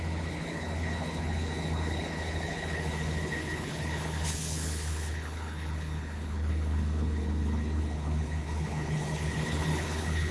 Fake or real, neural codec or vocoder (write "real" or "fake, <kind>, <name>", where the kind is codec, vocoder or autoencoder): fake, codec, HILCodec